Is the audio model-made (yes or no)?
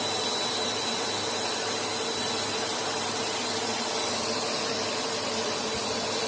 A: yes